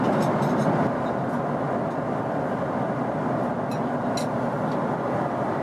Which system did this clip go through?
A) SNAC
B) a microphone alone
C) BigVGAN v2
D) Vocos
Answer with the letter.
B